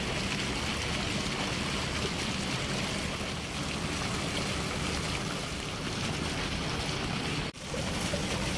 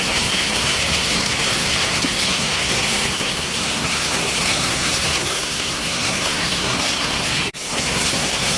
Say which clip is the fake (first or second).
second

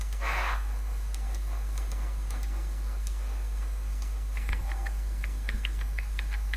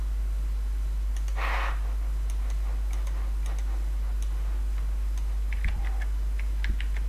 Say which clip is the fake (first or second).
first